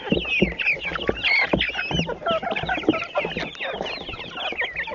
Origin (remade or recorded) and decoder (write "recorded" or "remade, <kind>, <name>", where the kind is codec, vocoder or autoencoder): recorded